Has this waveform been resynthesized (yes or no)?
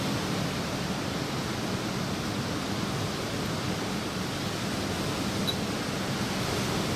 no